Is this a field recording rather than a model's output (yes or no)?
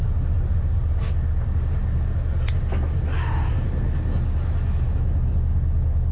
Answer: yes